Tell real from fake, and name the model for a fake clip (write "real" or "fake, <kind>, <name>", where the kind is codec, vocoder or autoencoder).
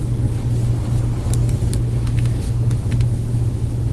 real